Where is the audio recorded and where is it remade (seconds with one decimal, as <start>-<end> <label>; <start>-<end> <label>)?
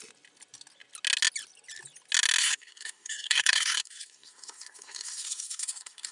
0.0-2.4 recorded; 2.4-6.1 remade